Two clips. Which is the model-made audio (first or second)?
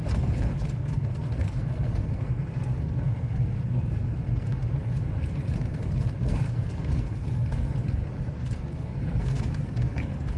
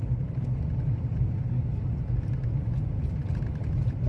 first